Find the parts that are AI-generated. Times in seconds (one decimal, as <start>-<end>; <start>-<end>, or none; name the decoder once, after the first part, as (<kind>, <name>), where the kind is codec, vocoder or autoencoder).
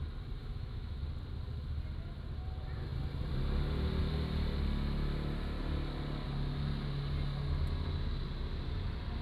0.4-1.0 (autoencoder, DAC-VAE)